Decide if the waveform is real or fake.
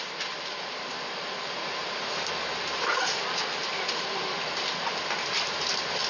real